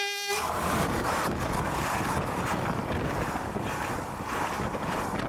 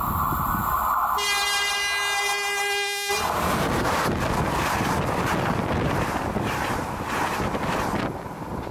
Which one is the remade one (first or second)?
first